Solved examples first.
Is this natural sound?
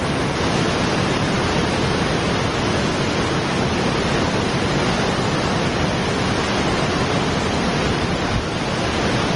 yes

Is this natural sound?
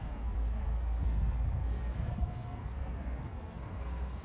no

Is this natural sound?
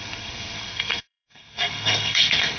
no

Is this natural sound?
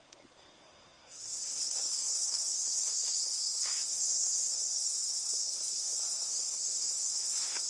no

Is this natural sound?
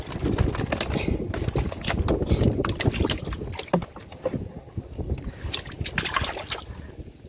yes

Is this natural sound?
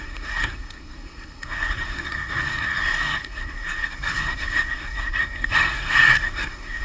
no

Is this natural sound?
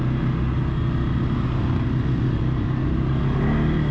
yes